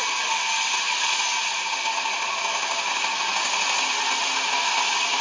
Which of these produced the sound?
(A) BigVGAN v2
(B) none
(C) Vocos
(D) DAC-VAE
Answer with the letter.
B